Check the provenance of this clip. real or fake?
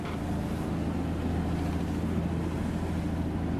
real